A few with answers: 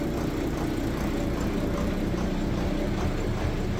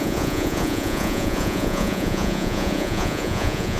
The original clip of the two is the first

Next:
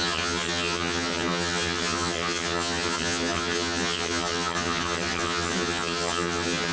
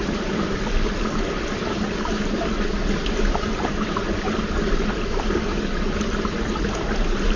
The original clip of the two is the second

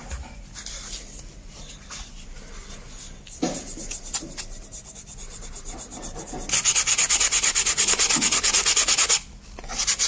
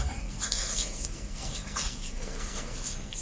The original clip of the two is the first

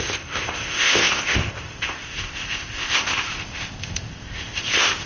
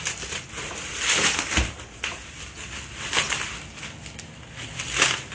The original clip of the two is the second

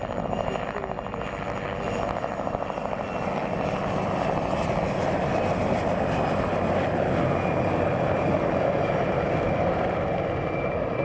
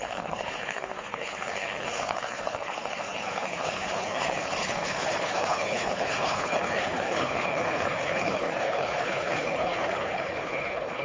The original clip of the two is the first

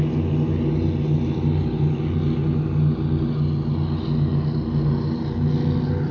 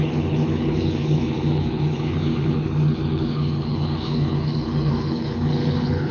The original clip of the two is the first